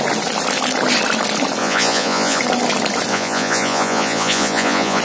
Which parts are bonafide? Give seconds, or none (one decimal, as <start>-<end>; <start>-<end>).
0.0-1.6; 2.4-3.1